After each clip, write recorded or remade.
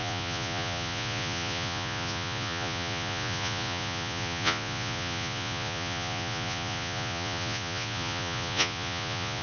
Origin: remade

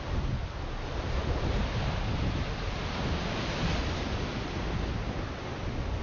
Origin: recorded